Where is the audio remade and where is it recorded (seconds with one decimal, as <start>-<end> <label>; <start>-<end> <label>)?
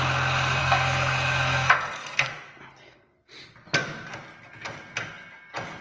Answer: 0.0-0.6 recorded; 0.6-2.3 remade; 2.3-5.8 recorded